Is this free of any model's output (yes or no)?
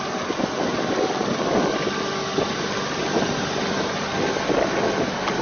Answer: yes